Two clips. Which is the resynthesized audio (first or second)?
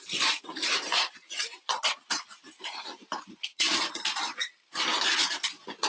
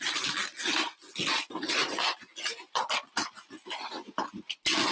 first